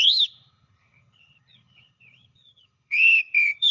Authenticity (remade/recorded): remade